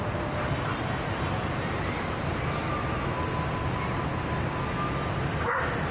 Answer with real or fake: real